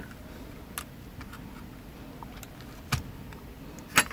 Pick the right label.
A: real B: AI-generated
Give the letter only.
A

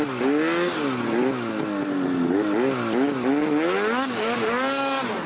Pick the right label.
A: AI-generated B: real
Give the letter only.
B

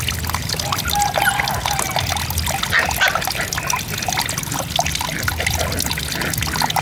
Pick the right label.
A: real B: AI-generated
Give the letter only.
A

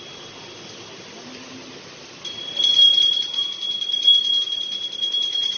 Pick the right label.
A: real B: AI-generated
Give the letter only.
A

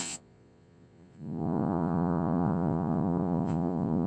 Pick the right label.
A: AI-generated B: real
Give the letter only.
A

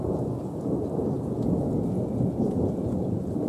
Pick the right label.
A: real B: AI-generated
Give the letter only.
B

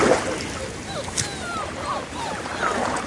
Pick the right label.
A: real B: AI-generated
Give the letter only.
A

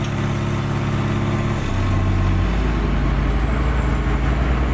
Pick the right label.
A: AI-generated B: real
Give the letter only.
B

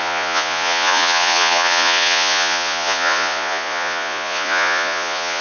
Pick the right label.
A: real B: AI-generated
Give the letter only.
B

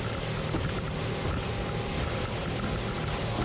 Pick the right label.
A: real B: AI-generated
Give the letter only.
A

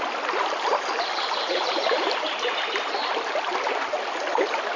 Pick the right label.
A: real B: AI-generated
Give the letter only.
A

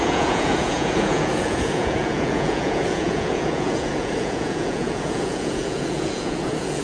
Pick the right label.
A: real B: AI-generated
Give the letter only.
B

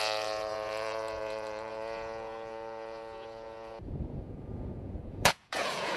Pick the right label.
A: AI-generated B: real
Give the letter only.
A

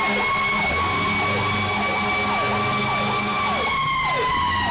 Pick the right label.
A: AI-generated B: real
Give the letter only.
B